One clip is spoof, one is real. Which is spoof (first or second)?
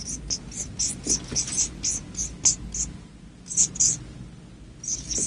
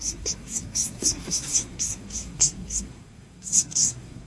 second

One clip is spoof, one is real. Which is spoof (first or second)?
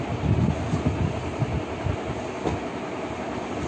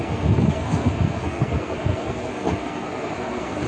second